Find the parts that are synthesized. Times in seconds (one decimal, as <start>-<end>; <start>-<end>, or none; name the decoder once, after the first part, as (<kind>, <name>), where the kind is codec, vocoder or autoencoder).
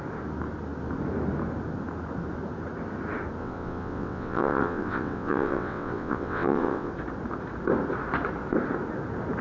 3.4-6.9 (vocoder, WaveNeXt)